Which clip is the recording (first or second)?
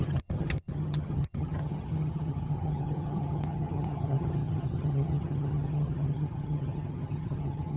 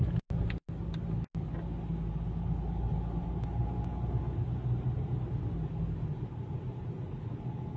second